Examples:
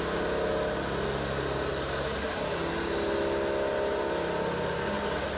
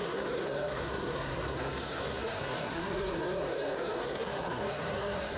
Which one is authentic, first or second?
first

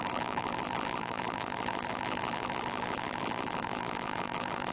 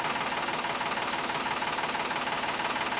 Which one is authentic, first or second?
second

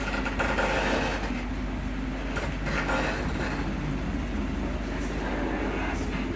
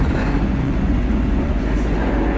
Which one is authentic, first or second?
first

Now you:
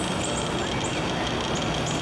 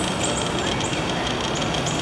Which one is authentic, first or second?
first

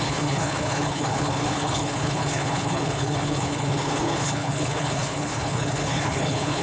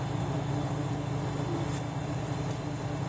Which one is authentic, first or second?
second